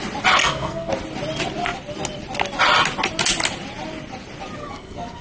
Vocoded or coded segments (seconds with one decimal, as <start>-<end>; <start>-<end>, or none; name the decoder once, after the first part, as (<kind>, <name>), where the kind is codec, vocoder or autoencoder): 0.4-0.9 (codec, SNAC); 4.6-5.2